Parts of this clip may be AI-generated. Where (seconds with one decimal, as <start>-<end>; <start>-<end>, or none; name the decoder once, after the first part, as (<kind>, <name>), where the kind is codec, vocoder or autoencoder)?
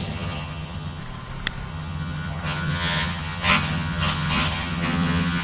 0.0-1.0 (vocoder, HiFi-GAN); 1.7-5.4